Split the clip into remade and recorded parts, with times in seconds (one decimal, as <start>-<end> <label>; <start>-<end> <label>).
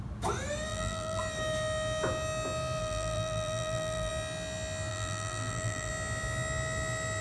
0.0-0.7 recorded; 0.7-1.2 remade; 1.2-2.8 recorded; 2.8-4.1 remade; 4.1-4.9 recorded; 4.9-5.9 remade; 5.9-7.2 recorded